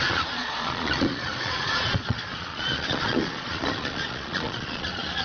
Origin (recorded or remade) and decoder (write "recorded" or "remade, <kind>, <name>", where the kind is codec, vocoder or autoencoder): remade, vocoder, Vocos